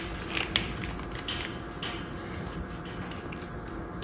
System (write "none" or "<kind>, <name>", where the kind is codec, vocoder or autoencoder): none